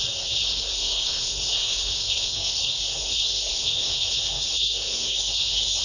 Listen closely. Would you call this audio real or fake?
fake